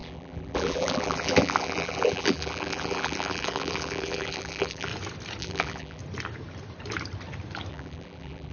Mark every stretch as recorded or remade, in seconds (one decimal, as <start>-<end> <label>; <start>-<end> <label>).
0.0-4.9 remade; 4.9-5.4 recorded; 5.4-6.0 remade; 6.0-7.7 recorded; 7.7-8.5 remade

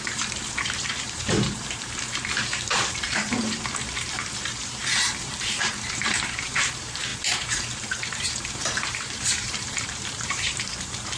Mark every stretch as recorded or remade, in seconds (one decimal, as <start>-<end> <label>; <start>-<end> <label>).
0.0-11.2 remade

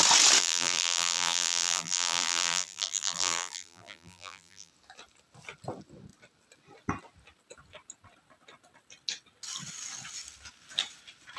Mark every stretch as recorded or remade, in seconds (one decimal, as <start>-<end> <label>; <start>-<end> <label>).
0.0-0.4 recorded; 0.4-4.7 remade; 4.7-11.4 recorded

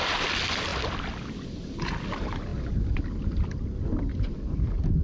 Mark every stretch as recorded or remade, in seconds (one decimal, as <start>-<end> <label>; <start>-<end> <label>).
0.0-5.0 recorded

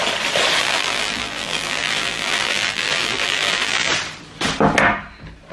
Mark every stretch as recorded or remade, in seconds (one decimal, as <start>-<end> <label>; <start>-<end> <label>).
0.0-0.6 recorded; 0.6-3.9 remade; 3.9-5.5 recorded

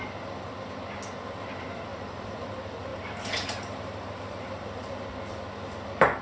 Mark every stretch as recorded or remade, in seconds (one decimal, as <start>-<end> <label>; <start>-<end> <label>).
0.0-1.9 recorded; 1.9-2.4 remade; 2.4-2.9 recorded; 2.9-5.0 remade; 5.0-6.2 recorded